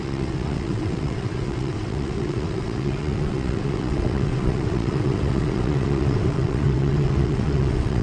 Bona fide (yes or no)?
no